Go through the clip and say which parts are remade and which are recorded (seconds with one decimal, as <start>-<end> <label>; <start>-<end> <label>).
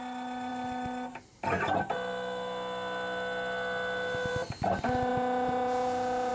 0.0-5.1 recorded; 5.1-6.3 remade